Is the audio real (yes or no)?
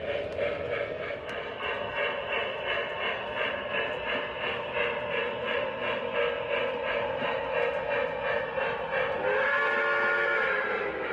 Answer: yes